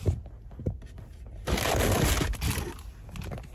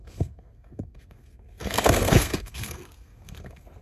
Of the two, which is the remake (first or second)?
second